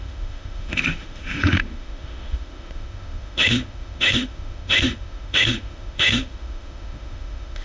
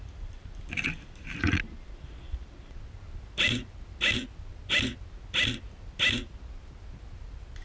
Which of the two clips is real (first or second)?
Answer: second